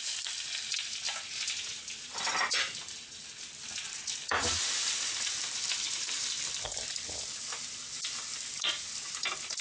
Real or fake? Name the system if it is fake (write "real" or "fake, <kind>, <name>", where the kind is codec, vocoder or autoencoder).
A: real